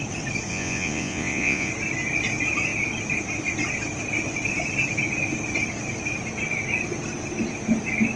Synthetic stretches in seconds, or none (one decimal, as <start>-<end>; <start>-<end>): 0.5-1.7